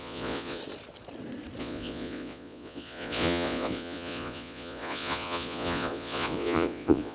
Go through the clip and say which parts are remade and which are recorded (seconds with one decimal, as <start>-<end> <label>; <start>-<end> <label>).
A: 0.0-0.6 remade; 0.6-1.6 recorded; 1.6-7.1 remade